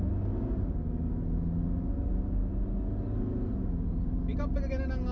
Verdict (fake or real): real